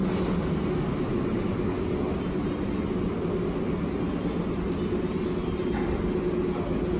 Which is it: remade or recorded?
recorded